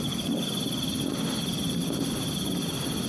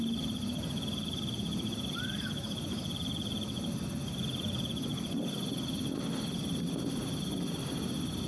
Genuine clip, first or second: second